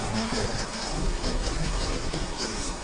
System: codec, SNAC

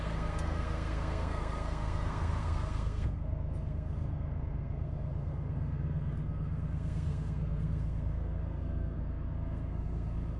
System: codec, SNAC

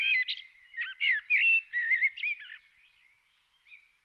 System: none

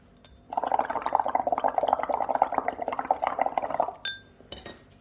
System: none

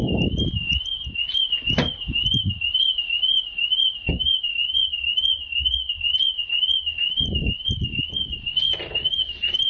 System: none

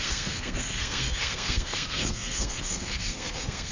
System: codec, SNAC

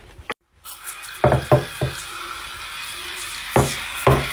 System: none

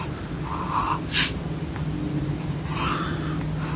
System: none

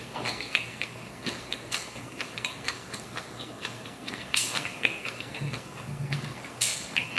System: codec, SNAC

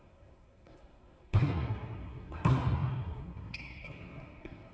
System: codec, SNAC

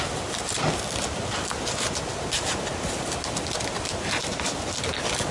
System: none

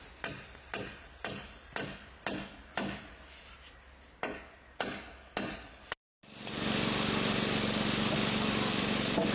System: none